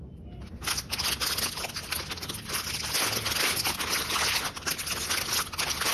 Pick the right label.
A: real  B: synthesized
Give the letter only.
A